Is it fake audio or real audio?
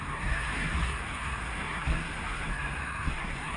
fake